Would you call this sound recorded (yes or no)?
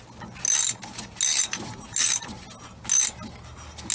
yes